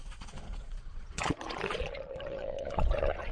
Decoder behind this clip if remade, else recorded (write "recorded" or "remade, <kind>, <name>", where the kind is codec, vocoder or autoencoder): remade, vocoder, Vocos